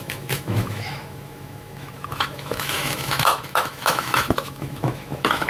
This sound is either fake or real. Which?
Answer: fake